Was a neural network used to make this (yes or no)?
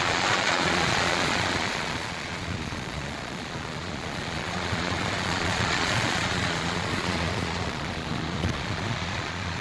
yes